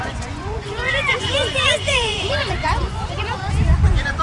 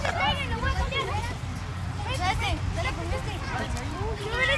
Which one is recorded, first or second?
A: second